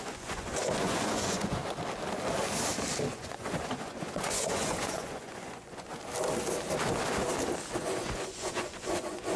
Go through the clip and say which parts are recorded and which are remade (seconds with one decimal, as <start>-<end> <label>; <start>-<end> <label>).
0.0-1.6 remade; 1.6-3.1 recorded; 3.1-5.9 remade; 5.9-7.8 recorded; 7.8-9.4 remade